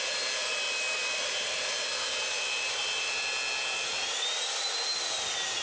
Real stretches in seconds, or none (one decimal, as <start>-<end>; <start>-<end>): 0.0-5.6

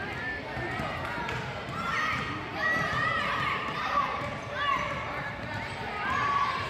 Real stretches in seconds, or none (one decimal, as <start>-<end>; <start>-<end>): 0.0-2.5

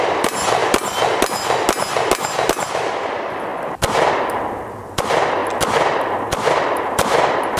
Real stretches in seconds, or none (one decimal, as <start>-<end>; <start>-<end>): 0.6-2.7; 3.5-4.2; 5.4-6.0

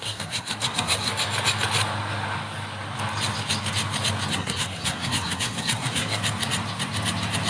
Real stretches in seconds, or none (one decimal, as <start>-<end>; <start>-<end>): 1.1-4.3; 6.2-7.5

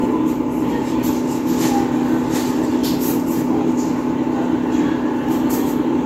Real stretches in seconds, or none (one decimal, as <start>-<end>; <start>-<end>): 0.0-6.1

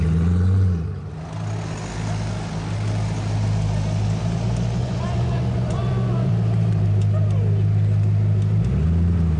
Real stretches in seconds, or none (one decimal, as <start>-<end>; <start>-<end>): 0.0-4.8; 6.3-9.4